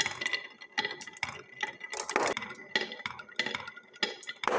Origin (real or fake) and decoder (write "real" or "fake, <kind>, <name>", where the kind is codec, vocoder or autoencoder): real